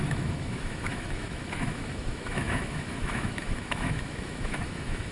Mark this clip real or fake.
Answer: fake